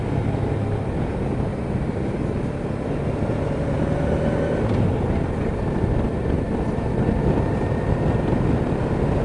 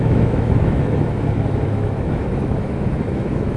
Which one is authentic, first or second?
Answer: first